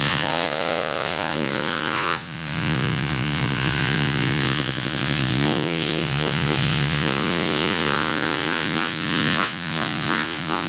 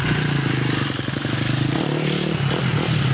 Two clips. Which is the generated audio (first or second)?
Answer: first